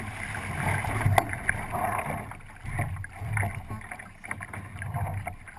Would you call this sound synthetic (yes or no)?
no